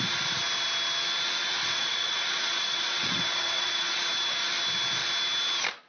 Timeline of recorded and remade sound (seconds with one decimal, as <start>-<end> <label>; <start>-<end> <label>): 0.0-1.6 recorded; 1.6-4.0 remade; 4.0-5.9 recorded